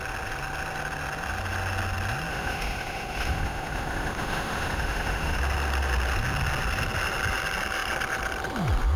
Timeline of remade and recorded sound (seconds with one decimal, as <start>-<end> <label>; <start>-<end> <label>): 0.0-2.3 recorded; 2.3-5.4 remade; 5.4-9.0 recorded

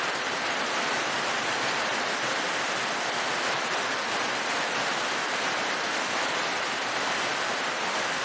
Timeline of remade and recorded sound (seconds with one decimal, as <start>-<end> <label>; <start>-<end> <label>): 0.0-7.3 remade; 7.3-8.2 recorded